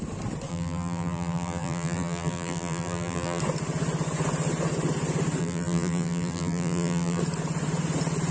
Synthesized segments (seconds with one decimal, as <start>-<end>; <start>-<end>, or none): 0.5-3.4; 5.4-7.2